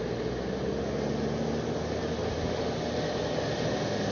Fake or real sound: real